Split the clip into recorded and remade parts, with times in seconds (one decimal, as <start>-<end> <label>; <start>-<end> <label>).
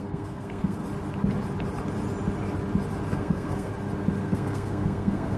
0.0-0.8 remade; 0.8-3.1 recorded; 3.1-3.7 remade; 3.7-4.2 recorded; 4.2-5.4 remade